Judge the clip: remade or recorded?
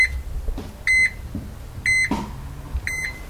recorded